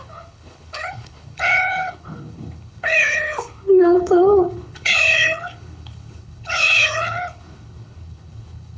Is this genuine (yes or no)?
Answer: no